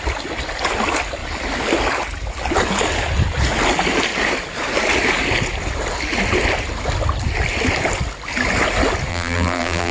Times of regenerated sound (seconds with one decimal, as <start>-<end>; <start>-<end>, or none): 9.1-9.9